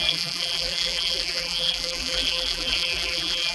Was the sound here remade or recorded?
remade